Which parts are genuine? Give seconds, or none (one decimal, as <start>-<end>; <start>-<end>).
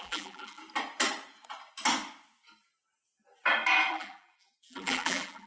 0.6-3.9